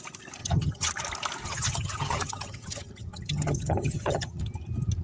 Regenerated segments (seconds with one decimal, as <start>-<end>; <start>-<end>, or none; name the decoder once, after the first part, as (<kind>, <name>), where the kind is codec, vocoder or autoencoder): 0.4-0.9 (vocoder, HiFi-GAN); 1.4-4.4